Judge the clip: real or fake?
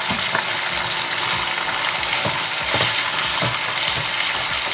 real